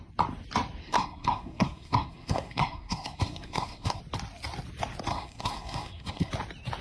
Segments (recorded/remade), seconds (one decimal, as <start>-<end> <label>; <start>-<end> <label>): 0.0-0.8 recorded; 0.8-4.0 remade; 4.0-5.1 recorded; 5.1-6.3 remade; 6.3-6.8 recorded